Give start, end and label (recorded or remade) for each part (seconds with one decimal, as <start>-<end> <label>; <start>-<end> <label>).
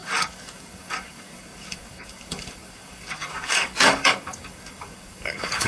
0.0-5.7 remade